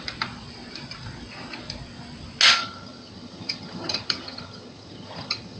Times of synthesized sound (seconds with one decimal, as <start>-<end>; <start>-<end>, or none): 2.6-5.6